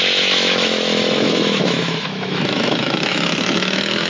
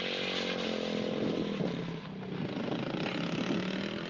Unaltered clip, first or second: second